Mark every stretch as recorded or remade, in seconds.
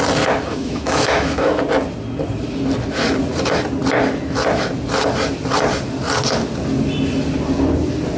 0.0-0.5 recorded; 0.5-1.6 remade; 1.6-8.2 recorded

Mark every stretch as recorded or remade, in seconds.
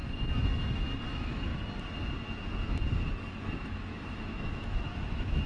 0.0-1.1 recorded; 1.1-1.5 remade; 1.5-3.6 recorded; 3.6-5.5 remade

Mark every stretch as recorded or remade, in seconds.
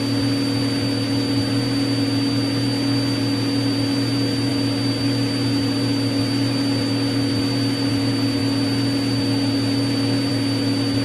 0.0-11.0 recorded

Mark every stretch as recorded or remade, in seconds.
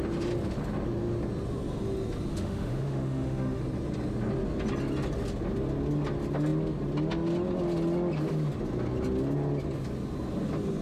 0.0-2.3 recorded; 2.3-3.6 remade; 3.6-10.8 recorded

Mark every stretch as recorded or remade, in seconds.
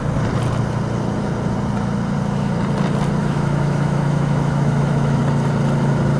0.0-3.2 recorded; 3.2-5.2 remade; 5.2-6.2 recorded